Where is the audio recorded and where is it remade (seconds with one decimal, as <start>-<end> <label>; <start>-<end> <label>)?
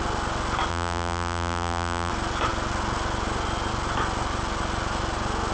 0.0-0.7 recorded; 0.7-2.1 remade; 2.1-5.5 recorded